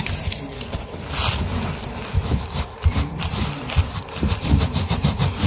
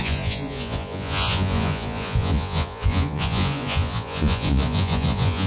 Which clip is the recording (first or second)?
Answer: first